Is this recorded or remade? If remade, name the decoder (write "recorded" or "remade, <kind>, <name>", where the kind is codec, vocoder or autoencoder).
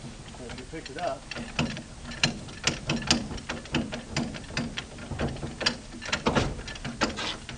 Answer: recorded